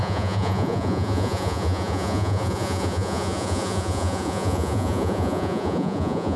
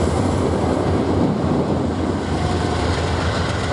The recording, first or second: second